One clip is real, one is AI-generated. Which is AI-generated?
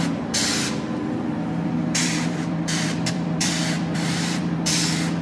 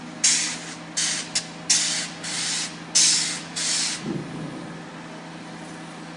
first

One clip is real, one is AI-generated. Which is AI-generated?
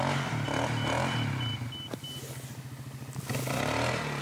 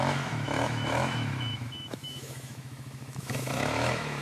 second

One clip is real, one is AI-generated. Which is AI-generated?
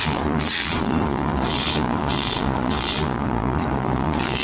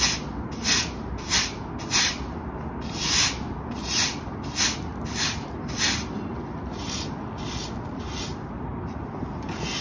first